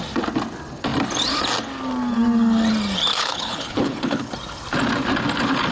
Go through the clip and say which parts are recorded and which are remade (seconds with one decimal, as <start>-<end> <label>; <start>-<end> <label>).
0.0-3.1 recorded; 3.1-4.3 remade; 4.3-5.7 recorded